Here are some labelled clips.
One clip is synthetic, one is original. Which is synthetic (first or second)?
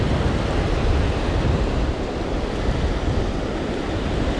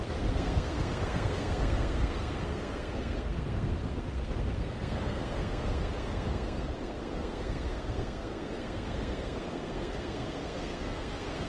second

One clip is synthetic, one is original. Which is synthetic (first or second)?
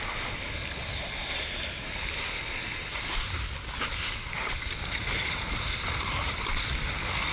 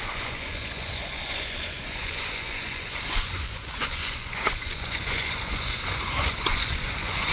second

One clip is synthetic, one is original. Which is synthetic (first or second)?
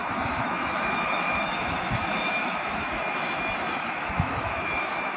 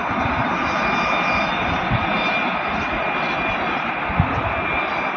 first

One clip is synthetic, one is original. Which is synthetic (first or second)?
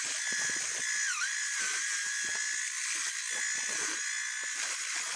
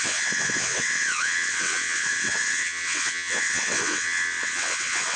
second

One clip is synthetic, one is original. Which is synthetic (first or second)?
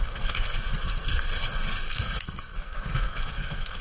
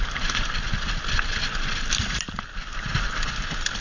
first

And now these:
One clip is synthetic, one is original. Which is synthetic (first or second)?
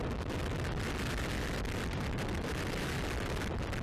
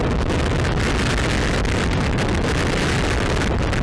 first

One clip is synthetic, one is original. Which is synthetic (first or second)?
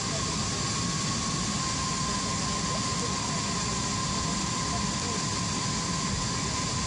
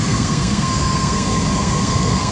second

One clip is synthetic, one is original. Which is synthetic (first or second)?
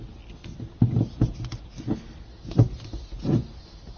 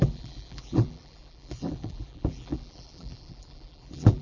second